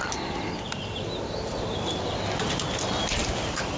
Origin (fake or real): real